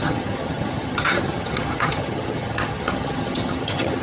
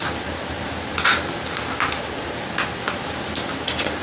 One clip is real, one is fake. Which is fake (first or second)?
first